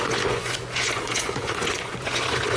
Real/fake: fake